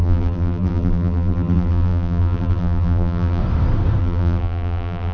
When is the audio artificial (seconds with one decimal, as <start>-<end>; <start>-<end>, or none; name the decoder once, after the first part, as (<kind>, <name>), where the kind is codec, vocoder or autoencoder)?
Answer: 0.0-3.4 (vocoder, BigVGAN v2); 4.0-5.1